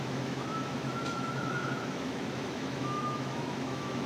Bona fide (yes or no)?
no